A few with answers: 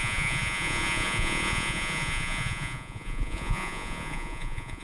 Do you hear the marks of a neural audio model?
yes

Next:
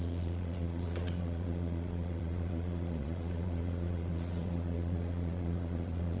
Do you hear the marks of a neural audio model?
yes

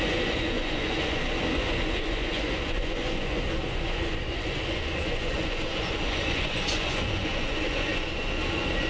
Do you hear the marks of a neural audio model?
yes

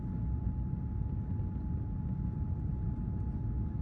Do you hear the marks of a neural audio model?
no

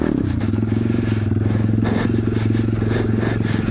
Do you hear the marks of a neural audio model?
no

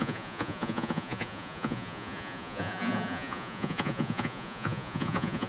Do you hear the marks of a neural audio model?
yes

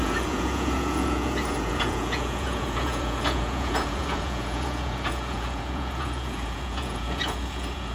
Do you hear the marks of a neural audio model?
yes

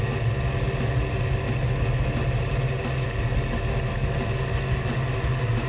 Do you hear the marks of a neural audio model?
no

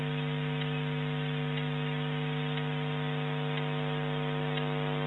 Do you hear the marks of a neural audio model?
no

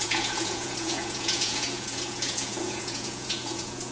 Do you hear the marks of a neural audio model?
yes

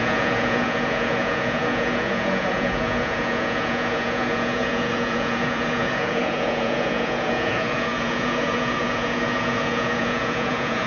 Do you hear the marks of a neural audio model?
yes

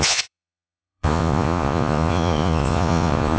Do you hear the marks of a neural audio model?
yes